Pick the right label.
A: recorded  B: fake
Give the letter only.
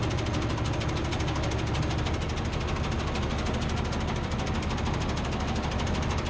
A